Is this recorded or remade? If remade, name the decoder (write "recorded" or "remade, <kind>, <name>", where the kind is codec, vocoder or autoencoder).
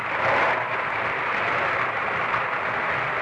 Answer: remade, vocoder, BigVGAN v2